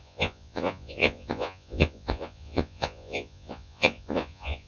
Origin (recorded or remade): remade